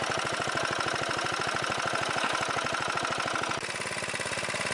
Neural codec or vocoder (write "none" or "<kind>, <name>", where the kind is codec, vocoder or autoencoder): none